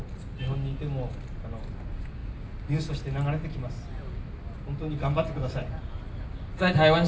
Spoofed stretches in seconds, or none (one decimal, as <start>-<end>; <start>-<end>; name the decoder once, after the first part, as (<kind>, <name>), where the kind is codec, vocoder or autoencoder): none